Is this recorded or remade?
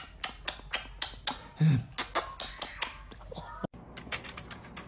recorded